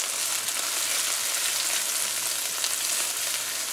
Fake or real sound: real